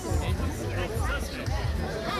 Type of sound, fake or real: real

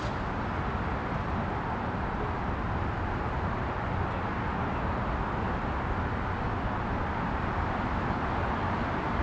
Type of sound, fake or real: real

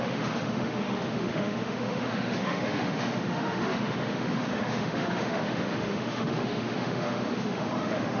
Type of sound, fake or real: fake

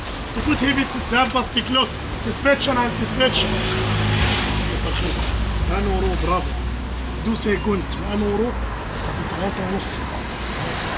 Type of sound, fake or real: real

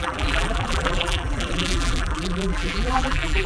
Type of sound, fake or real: fake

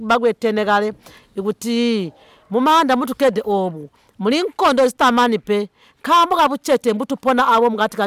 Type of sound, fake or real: real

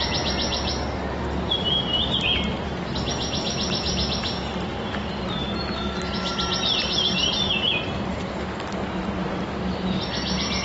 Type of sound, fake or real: real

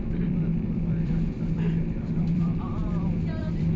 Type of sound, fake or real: fake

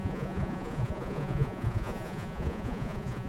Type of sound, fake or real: fake